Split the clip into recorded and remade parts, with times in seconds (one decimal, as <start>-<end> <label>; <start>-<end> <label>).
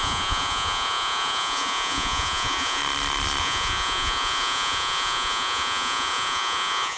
0.0-2.8 remade; 2.8-3.4 recorded; 3.4-7.0 remade